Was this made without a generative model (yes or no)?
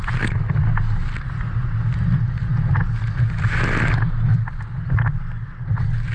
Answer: yes